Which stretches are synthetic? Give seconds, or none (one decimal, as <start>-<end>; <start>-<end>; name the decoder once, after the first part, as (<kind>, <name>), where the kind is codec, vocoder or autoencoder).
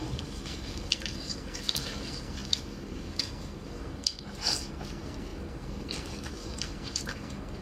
0.0-7.6 (codec, SNAC)